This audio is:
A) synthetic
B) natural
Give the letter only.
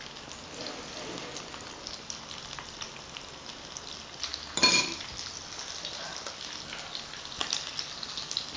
B